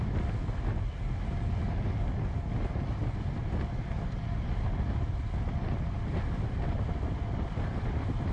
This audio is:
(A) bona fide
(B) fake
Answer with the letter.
A